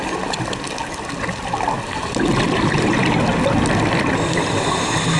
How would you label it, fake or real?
real